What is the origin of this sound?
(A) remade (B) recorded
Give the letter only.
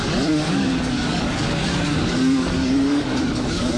A